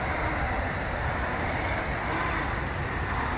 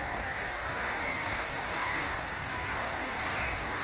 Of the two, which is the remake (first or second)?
second